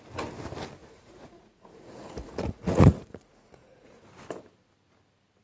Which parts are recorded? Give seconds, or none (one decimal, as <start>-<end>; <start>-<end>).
0.0-0.8; 4.0-5.4